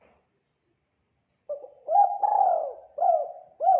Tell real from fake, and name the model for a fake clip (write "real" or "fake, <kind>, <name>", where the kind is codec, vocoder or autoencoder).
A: real